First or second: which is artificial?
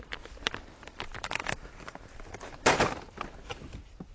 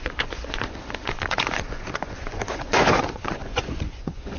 second